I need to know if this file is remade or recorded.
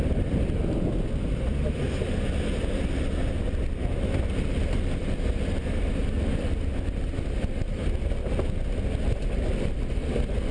recorded